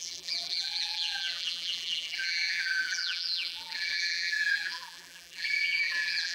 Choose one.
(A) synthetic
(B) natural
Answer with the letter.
A